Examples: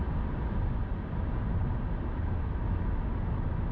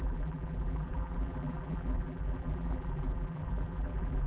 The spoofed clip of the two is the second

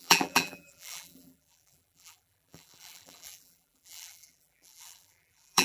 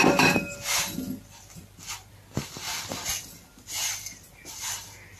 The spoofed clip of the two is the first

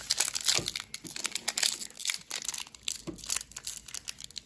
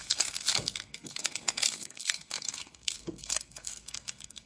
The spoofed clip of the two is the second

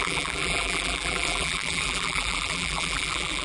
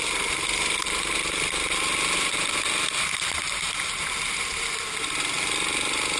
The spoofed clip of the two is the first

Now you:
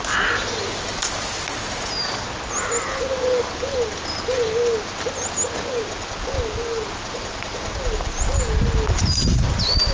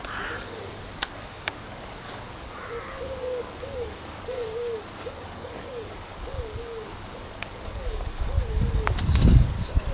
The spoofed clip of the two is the second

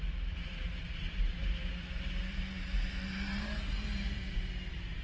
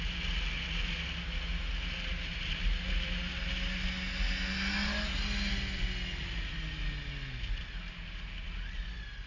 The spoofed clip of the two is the first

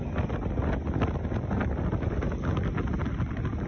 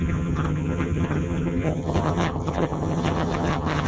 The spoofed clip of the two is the second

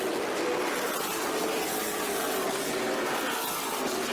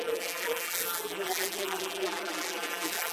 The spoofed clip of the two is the second